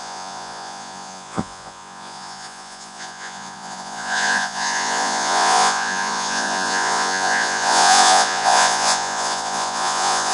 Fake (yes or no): yes